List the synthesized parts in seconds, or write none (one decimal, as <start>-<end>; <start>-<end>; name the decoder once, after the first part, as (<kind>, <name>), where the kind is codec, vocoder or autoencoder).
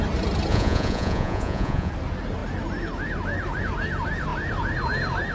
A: 0.5-1.9 (vocoder, Vocos)